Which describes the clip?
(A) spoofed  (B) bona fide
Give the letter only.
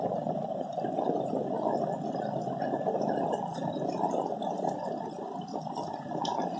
B